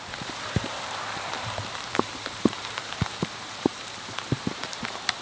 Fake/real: fake